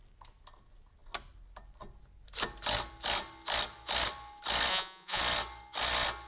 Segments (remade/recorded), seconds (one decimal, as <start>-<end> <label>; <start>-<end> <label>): 0.0-4.7 recorded; 4.7-5.2 remade; 5.2-6.3 recorded

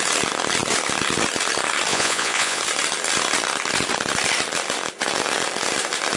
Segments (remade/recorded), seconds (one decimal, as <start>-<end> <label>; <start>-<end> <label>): 0.0-1.9 recorded; 1.9-2.6 remade; 2.6-6.2 recorded

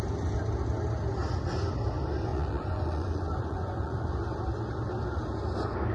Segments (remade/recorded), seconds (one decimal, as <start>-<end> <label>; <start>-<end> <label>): 0.0-2.3 recorded; 2.3-4.1 remade; 4.1-5.9 recorded